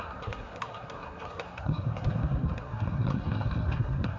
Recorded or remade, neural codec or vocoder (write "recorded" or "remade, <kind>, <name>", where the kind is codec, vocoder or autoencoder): remade, codec, SNAC